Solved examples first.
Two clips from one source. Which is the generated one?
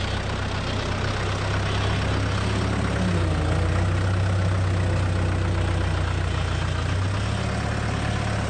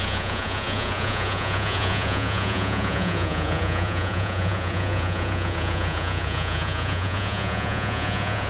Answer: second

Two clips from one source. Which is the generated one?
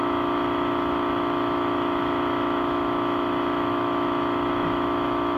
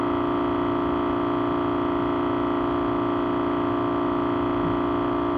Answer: first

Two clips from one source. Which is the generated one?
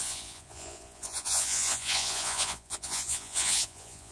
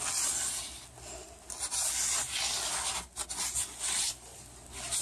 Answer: first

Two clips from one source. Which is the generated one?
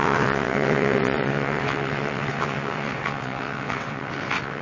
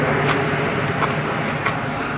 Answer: first